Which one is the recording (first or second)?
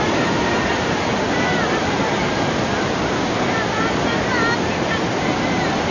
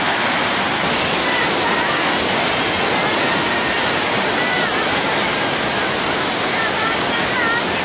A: second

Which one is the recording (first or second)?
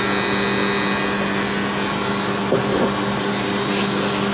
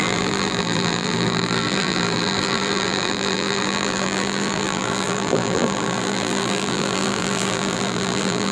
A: first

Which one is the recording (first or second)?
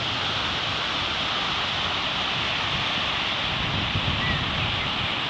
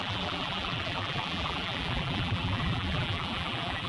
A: first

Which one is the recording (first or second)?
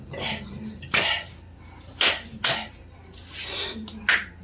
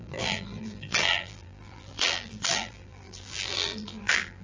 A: first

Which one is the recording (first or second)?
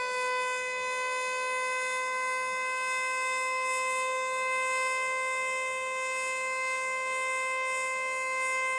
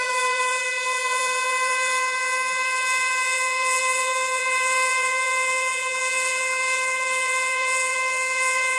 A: first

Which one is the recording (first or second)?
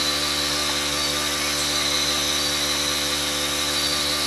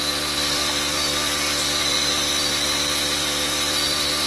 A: first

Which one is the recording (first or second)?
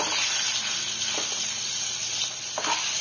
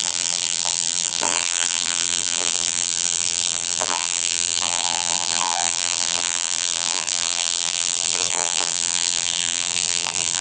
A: first